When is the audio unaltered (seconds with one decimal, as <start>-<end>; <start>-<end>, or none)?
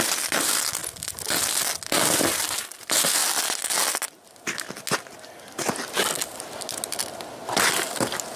0.0-8.4